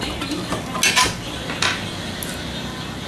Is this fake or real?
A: real